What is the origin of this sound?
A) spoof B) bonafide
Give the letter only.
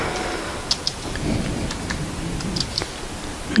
B